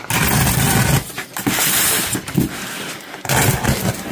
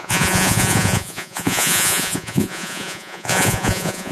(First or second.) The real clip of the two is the first